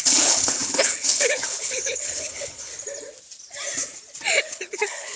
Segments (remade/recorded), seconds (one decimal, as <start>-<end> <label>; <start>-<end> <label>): 0.0-2.7 remade; 2.7-4.4 recorded; 4.4-5.2 remade